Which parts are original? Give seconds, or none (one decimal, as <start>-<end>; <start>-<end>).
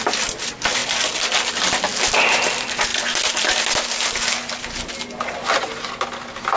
0.0-6.6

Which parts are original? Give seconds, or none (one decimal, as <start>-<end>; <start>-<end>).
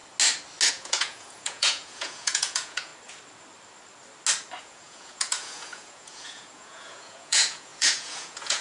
0.0-0.7; 2.9-4.6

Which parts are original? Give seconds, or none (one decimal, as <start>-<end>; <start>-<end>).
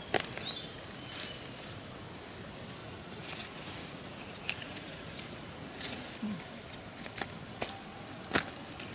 0.0-2.8; 6.1-8.9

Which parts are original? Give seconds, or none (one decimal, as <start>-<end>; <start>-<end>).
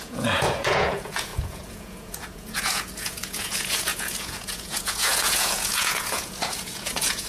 none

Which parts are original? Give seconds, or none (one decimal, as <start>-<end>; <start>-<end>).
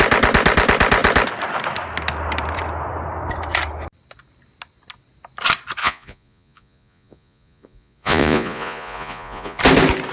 0.0-5.8; 9.6-10.1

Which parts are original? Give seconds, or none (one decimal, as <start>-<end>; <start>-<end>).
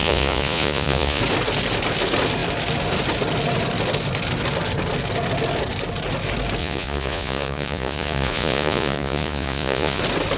1.2-6.6; 10.0-10.4